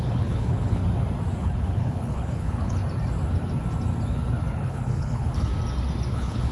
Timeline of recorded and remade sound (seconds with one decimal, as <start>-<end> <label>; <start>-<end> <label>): 0.0-0.8 remade; 0.8-1.4 recorded; 1.4-2.8 remade; 2.8-4.5 recorded; 4.5-5.5 remade; 5.5-6.1 recorded; 6.1-6.5 remade